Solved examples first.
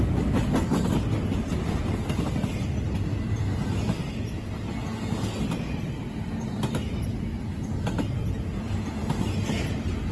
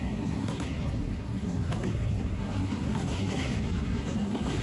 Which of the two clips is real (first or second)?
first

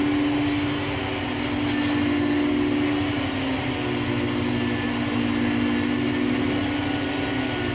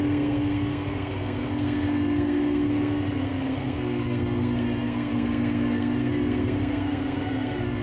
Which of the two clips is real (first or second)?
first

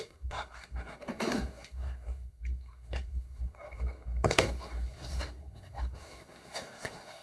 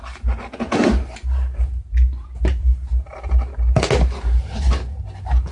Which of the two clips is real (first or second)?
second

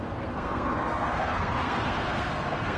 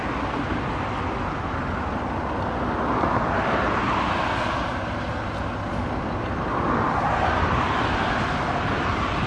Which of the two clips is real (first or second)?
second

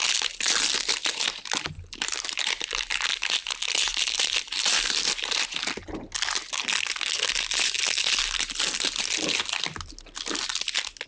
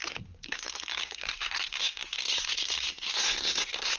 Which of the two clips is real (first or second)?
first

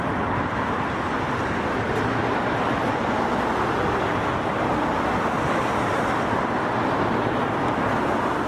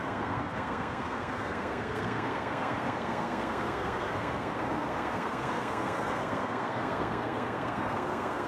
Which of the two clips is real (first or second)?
first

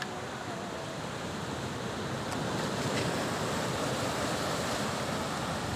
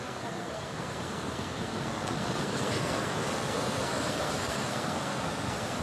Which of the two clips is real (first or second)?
first